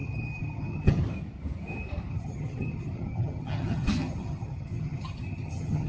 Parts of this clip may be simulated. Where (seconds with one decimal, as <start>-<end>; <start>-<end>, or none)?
0.0-1.0; 2.1-5.9